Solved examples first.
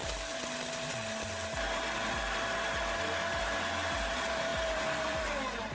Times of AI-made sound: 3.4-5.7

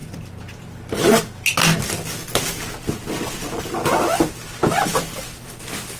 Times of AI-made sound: 4.9-5.6

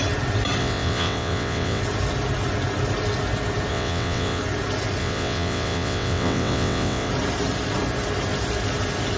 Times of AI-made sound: 0.6-1.8; 3.7-4.4; 5.0-7.1

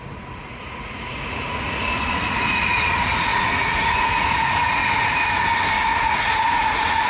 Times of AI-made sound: 0.0-4.8; 6.0-7.1

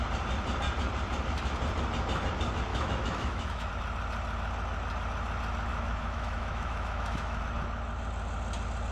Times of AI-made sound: 2.7-3.7; 5.7-7.4